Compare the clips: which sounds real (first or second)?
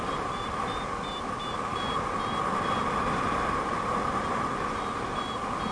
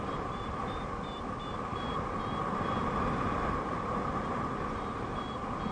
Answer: first